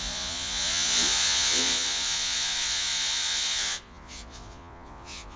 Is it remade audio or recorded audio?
remade